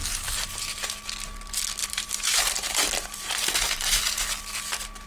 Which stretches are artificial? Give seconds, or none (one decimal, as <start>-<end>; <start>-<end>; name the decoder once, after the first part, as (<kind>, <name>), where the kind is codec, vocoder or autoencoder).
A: 0.0-0.9 (vocoder, BigVGAN v2); 1.8-4.0